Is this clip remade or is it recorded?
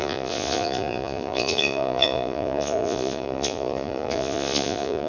remade